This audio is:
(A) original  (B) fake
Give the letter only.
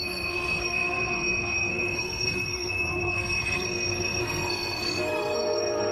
B